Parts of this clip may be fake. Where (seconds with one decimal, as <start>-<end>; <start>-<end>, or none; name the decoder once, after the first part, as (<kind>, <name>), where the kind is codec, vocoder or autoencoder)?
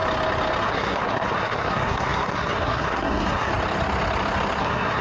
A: 0.6-3.5 (codec, SNAC); 4.6-5.0